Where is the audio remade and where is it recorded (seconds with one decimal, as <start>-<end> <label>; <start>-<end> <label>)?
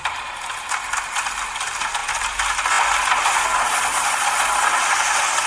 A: 0.0-5.5 recorded